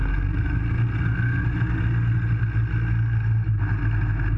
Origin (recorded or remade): recorded